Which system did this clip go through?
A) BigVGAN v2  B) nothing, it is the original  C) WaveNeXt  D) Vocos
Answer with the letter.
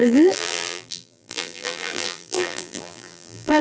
A